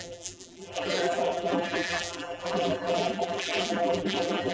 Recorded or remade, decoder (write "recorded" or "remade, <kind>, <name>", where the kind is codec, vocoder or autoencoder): remade, vocoder, BigVGAN v2